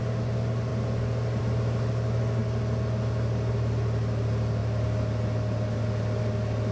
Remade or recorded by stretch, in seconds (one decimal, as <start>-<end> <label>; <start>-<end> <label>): 0.0-6.7 recorded